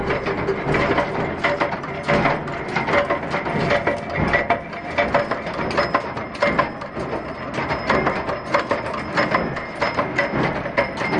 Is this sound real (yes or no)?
yes